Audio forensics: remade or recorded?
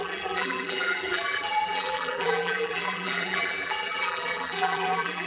remade